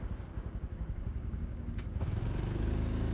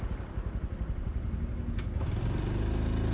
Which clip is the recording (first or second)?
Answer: second